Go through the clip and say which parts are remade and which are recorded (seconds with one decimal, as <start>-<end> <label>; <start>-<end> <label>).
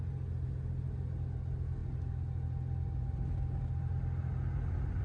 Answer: 0.0-5.0 recorded